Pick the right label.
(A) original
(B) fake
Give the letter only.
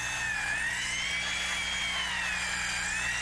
A